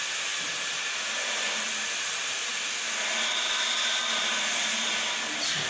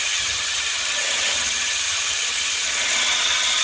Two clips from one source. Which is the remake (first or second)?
second